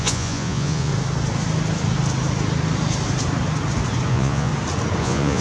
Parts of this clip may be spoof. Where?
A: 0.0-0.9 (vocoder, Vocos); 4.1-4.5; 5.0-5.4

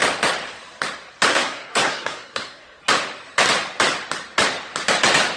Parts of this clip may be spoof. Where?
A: 1.3-2.8 (codec, SNAC)

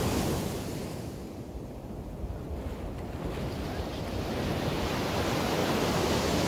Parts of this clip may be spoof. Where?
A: none

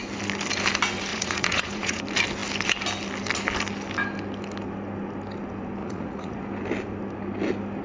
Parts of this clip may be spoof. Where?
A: 1.1-2.0 (vocoder, Vocos); 5.8-6.4

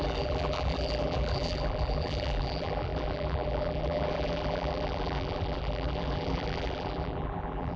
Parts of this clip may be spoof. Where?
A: 0.0-7.8 (vocoder, BigVGAN v2)